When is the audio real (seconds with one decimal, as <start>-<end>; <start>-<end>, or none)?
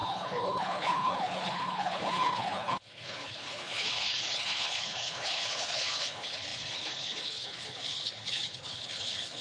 none